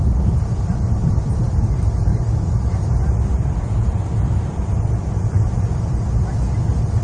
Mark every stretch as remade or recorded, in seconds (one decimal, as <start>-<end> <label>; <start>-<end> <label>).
0.0-2.1 recorded; 2.1-5.9 remade; 5.9-7.0 recorded